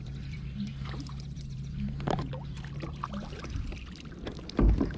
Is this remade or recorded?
remade